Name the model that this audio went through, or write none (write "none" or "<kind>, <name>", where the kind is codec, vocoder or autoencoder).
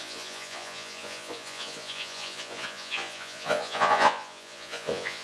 vocoder, Vocos